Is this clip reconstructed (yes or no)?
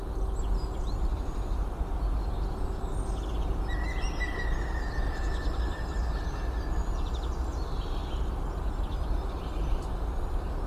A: no